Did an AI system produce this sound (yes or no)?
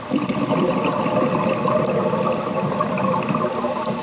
no